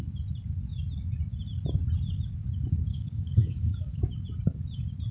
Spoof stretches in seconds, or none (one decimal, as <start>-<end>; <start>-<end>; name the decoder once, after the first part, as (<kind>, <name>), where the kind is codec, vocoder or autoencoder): 2.9-4.1 (codec, DAC)